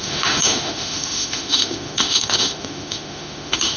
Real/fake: fake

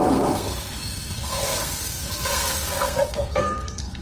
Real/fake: fake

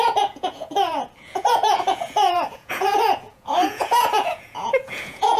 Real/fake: fake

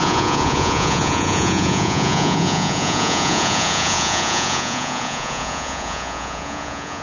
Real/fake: fake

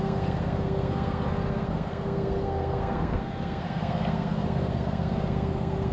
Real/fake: fake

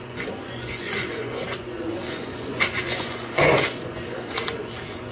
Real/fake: fake